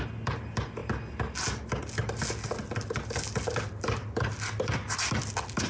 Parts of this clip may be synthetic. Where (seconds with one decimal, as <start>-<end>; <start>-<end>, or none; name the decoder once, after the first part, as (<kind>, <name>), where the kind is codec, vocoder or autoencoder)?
none